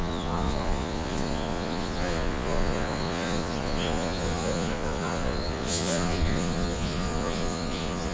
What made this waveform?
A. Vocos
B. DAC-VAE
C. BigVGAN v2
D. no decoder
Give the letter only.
A